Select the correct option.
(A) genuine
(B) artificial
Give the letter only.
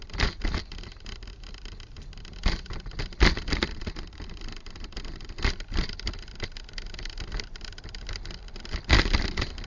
A